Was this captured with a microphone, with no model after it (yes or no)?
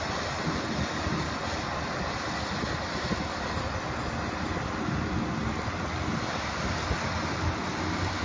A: yes